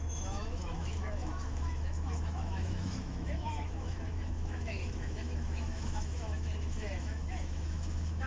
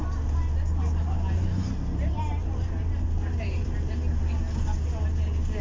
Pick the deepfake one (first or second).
first